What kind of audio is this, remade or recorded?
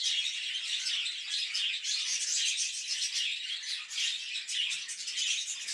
recorded